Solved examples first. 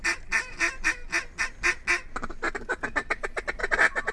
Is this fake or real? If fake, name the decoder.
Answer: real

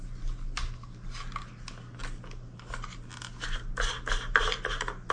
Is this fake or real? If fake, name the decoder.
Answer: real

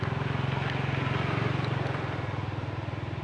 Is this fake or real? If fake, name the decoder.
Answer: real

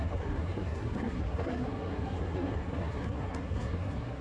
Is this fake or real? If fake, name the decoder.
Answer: fake, codec, SNAC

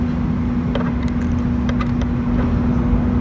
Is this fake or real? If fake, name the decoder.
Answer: real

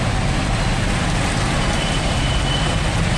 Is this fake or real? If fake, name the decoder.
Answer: real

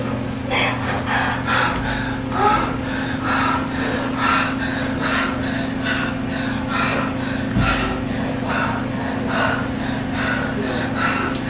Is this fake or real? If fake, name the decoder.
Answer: real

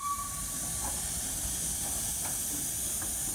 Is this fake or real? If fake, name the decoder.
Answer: real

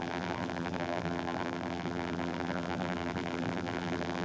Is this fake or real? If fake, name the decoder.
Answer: fake, vocoder, BigVGAN v2